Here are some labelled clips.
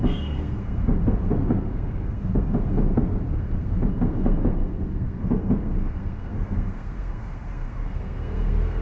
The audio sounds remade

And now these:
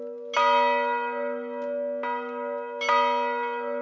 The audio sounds recorded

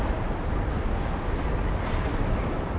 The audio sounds recorded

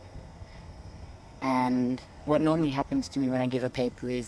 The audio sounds remade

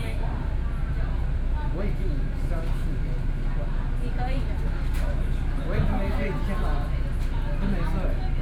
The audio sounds recorded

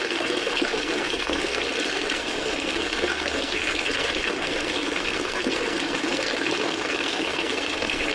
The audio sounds remade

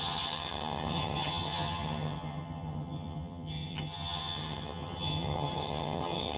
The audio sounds remade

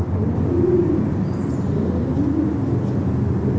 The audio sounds recorded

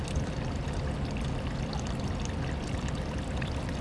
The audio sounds recorded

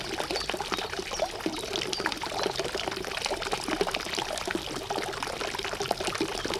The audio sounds recorded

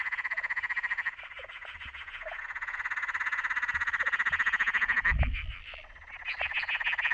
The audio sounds recorded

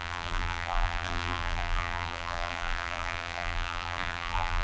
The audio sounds remade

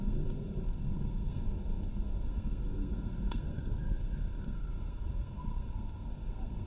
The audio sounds remade